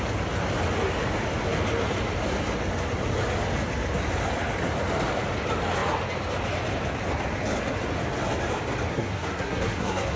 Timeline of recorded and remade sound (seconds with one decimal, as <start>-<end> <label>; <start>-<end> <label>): 0.0-8.9 recorded; 8.9-10.2 remade